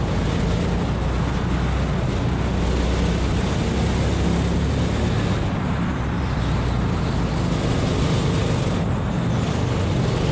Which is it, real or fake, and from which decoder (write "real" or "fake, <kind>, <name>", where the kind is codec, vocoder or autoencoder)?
real